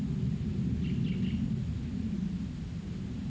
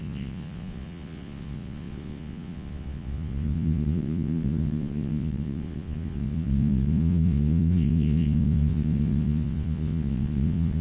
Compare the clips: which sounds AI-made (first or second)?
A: second